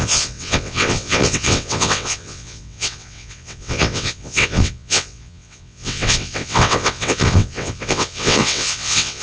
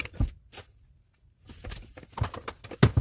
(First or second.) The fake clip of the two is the first